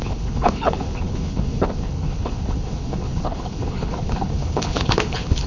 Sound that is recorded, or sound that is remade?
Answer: remade